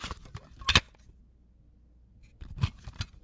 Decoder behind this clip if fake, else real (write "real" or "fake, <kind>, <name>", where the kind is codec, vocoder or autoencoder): real